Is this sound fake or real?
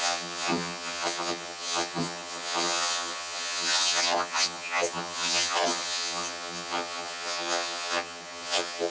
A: fake